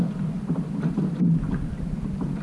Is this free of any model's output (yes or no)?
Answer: yes